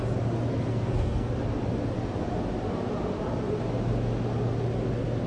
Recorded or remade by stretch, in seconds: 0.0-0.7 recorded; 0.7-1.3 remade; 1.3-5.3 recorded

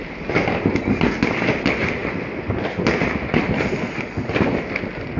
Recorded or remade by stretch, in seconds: 0.0-5.2 recorded

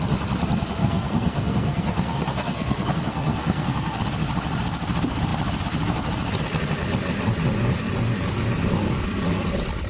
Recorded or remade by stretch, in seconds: 0.0-0.8 recorded; 0.8-4.0 remade; 4.0-9.9 recorded

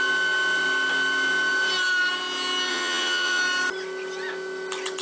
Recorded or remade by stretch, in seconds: 0.0-2.7 recorded; 2.7-3.4 remade; 3.4-5.0 recorded

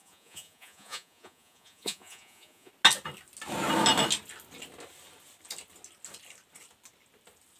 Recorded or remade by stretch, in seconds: 0.0-2.7 remade; 2.7-7.6 recorded

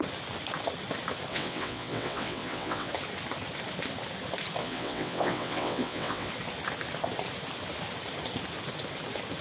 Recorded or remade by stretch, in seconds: 0.0-1.3 recorded; 1.3-2.9 remade; 2.9-4.6 recorded; 4.6-6.3 remade; 6.3-9.4 recorded

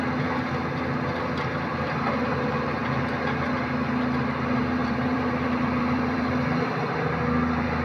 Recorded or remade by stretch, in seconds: 0.0-4.8 recorded; 4.8-6.9 remade; 6.9-7.8 recorded

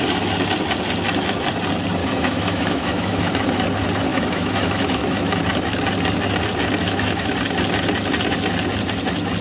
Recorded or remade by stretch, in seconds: 0.0-2.0 recorded; 2.0-3.3 remade; 3.3-4.1 recorded; 4.1-5.4 remade; 5.4-6.8 recorded; 6.8-7.3 remade; 7.3-9.4 recorded